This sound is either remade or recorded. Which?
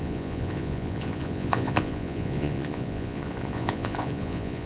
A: remade